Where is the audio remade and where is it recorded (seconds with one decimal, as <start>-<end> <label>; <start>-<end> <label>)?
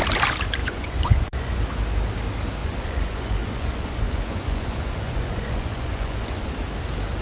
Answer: 0.0-0.6 recorded; 0.6-1.6 remade; 1.6-2.6 recorded; 2.6-6.5 remade; 6.5-7.2 recorded